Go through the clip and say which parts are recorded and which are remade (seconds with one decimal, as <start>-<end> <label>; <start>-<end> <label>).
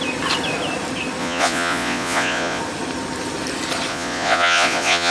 0.0-1.2 recorded; 1.2-2.6 remade; 2.6-3.9 recorded; 3.9-5.1 remade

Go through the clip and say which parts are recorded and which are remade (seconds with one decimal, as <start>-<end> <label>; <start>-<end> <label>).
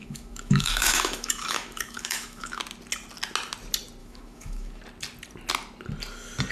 0.0-2.6 remade; 2.6-4.0 recorded; 4.0-4.8 remade; 4.8-6.5 recorded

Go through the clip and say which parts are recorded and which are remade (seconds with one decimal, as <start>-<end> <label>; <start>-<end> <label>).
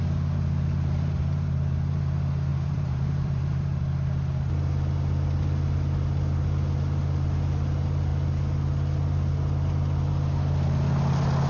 0.0-2.5 recorded; 2.5-3.8 remade; 3.8-11.5 recorded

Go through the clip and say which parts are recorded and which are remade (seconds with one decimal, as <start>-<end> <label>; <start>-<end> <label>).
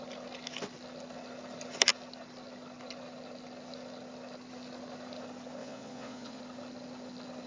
0.0-5.6 recorded; 5.6-6.4 remade; 6.4-7.5 recorded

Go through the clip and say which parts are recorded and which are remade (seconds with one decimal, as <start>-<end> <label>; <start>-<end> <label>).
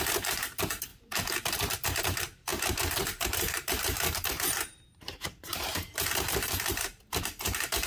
0.0-7.9 remade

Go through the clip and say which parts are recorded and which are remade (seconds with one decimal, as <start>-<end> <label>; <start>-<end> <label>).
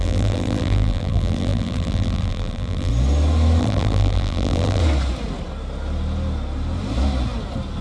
0.0-2.9 remade; 2.9-3.6 recorded; 3.6-4.8 remade; 4.8-7.8 recorded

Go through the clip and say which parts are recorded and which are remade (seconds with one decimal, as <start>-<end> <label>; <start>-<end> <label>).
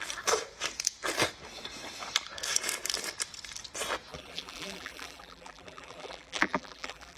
0.0-4.1 recorded; 4.1-7.2 remade